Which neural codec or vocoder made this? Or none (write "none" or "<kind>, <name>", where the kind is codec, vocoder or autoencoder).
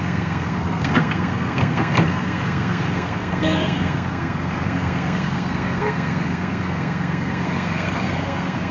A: codec, SNAC